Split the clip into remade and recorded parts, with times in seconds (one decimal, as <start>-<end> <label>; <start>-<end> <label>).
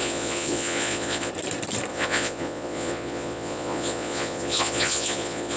0.0-1.3 remade; 1.3-1.9 recorded; 1.9-5.6 remade